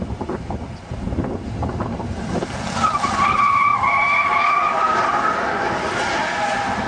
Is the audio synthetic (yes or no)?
no